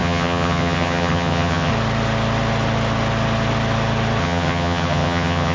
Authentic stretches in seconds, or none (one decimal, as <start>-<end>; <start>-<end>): 1.7-4.2